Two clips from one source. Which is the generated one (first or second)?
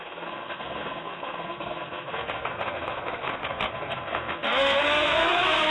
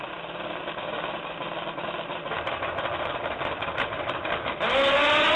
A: first